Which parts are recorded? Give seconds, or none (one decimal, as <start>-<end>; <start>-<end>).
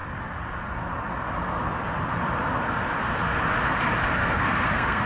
0.0-4.2